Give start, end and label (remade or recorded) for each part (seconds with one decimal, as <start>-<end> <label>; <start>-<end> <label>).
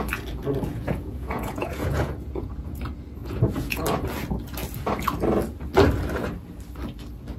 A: 0.0-0.7 recorded; 0.7-2.8 remade; 2.8-3.2 recorded; 3.2-3.8 remade; 3.8-7.4 recorded